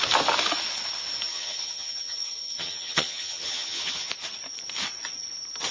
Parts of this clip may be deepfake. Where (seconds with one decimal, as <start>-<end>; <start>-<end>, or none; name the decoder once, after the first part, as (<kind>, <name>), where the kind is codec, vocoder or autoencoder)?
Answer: 1.3-4.1 (vocoder, HiFi-GAN)